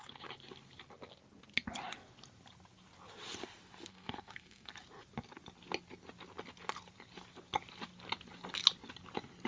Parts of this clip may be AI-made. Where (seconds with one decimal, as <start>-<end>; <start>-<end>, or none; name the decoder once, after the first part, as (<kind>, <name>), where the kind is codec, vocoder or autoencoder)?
3.9-4.7 (codec, SNAC)